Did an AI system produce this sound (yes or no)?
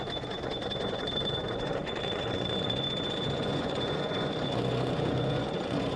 yes